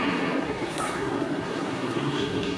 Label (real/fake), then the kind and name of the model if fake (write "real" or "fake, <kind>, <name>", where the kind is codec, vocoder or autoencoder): fake, codec, SNAC